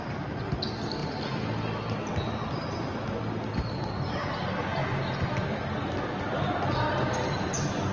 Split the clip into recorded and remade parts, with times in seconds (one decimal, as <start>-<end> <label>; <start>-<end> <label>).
0.0-7.9 recorded